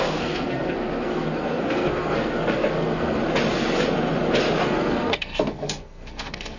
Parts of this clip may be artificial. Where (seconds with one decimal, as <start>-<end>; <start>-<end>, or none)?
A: 0.0-3.2; 4.6-6.6